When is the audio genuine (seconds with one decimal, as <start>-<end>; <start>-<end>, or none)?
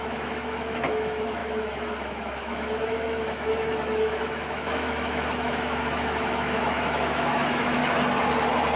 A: 7.8-8.8